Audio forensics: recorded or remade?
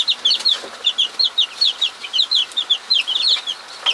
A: recorded